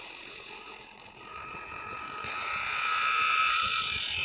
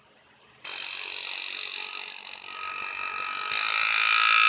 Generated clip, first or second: first